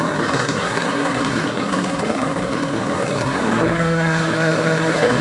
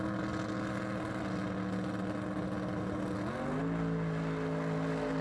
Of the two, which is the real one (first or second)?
second